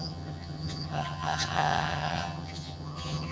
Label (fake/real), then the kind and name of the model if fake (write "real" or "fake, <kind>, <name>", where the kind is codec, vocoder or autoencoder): fake, vocoder, HiFi-GAN